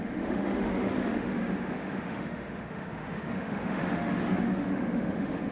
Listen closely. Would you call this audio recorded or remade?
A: remade